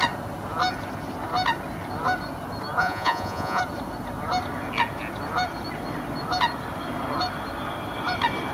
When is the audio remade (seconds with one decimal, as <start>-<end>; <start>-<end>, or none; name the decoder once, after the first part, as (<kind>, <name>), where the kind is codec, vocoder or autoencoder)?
2.8-3.6 (vocoder, Vocos)